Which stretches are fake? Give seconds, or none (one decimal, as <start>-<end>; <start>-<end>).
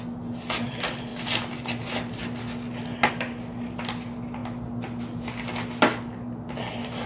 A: none